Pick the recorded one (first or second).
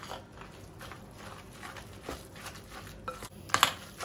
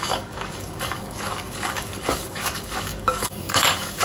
first